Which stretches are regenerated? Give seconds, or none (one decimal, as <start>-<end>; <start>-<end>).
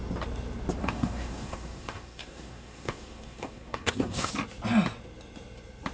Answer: 0.8-4.3